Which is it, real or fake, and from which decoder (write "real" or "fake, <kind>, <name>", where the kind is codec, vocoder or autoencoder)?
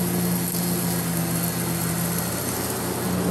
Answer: real